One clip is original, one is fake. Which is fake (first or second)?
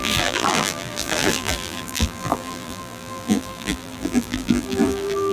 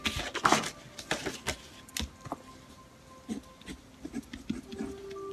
first